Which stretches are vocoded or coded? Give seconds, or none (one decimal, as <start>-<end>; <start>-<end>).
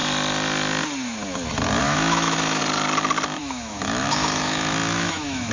1.8-2.6; 3.4-5.5